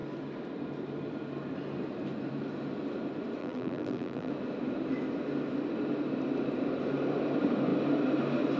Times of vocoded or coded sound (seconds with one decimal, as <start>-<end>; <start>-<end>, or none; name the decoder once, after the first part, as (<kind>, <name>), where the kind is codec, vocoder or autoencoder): 3.4-4.3 (vocoder, BigVGAN v2)